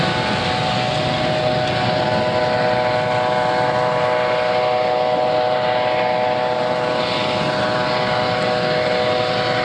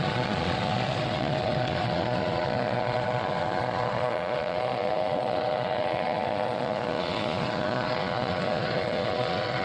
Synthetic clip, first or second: second